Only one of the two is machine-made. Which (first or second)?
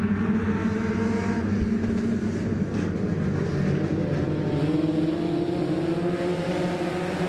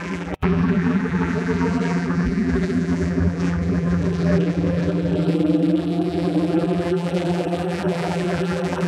second